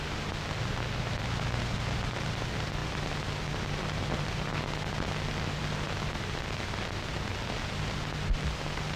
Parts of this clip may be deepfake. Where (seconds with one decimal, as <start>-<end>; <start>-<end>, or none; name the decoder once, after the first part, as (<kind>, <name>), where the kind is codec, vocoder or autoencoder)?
none